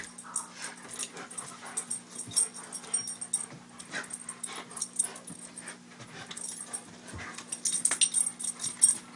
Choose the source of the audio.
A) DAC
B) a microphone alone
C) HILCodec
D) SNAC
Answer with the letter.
B